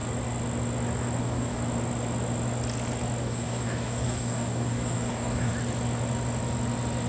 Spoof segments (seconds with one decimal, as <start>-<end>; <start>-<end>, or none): 1.2-1.6; 3.2-5.5